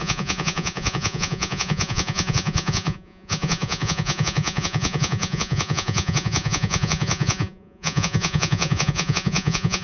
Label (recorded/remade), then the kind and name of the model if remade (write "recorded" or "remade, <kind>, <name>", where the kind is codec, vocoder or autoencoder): remade, vocoder, Vocos